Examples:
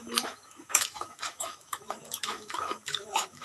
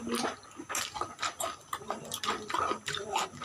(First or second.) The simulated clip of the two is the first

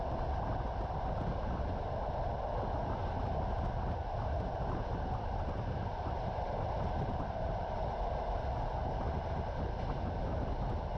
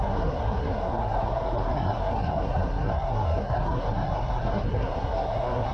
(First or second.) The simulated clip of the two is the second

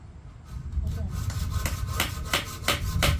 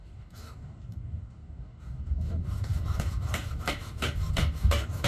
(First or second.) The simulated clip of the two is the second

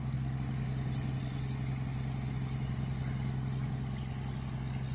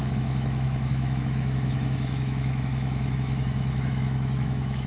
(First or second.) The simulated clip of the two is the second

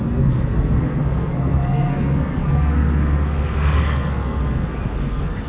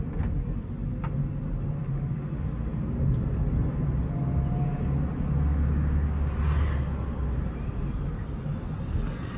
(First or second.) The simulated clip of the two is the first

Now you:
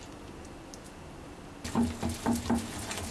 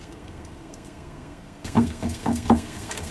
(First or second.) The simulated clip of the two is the second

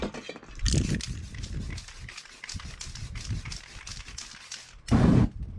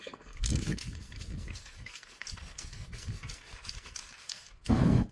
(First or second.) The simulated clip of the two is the second